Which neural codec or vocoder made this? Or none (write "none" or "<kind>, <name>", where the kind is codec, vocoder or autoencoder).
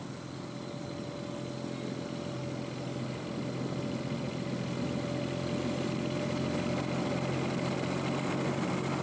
none